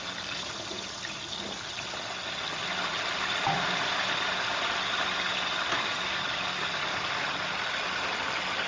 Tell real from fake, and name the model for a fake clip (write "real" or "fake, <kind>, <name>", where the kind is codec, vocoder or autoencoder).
real